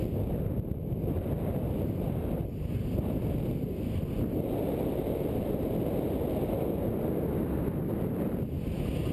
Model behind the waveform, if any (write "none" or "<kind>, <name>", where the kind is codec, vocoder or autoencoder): none